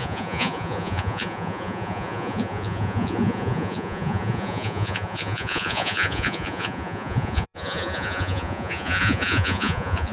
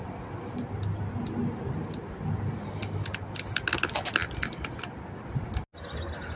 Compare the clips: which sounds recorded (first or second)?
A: second